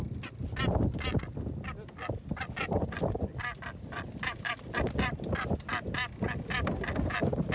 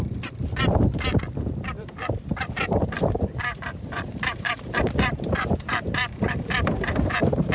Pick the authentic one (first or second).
first